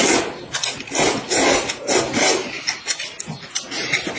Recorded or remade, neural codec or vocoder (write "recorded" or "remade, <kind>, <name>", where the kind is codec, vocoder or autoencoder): recorded